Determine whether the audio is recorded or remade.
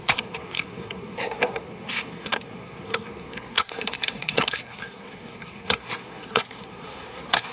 remade